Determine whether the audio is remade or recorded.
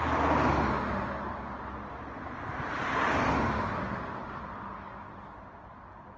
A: recorded